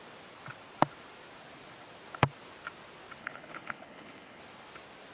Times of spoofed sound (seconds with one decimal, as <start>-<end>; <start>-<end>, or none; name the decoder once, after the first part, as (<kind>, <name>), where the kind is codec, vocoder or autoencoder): 3.2-4.4 (codec, HILCodec)